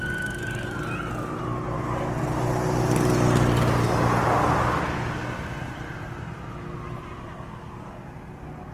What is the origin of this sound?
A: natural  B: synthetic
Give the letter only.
A